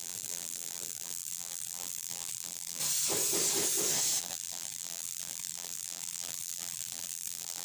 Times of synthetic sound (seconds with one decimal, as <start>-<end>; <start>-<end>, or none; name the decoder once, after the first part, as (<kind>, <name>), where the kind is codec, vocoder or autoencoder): 0.0-2.8 (vocoder, BigVGAN v2); 4.2-7.6